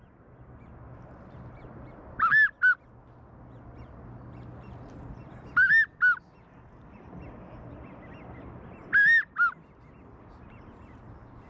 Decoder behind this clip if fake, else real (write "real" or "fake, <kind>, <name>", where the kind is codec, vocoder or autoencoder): real